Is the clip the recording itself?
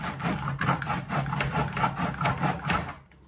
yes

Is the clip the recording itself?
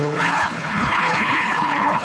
no